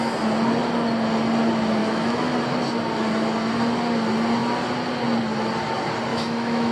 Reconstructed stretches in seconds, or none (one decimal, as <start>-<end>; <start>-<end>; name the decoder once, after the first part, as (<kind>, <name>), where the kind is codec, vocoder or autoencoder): 1.8-2.4 (autoencoder, DAC-VAE); 6.1-6.7